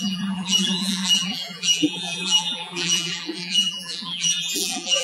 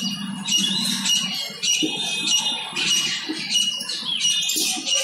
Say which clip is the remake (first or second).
first